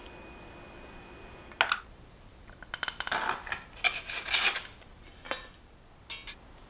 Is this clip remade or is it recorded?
recorded